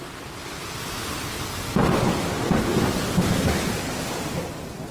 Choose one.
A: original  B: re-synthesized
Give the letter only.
A